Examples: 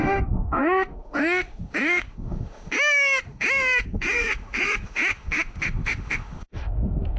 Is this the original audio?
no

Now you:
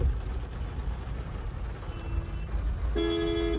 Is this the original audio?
yes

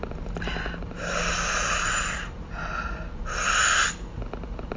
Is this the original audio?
yes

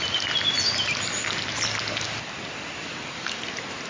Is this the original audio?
yes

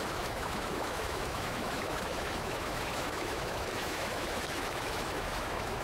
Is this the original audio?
no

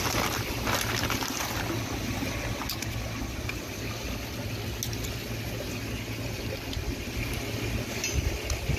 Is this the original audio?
yes